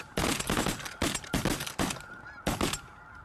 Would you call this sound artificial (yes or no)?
no